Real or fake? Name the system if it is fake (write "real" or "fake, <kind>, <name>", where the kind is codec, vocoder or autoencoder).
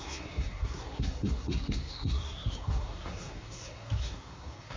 fake, codec, SNAC